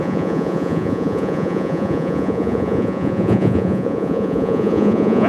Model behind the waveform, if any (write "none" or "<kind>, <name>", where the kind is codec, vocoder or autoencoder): vocoder, Vocos